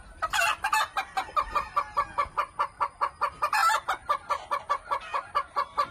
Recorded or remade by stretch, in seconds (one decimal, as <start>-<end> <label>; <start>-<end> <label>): 0.0-5.9 recorded